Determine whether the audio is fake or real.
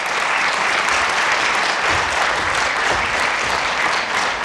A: real